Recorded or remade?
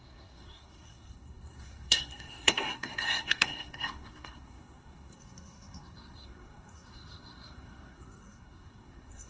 remade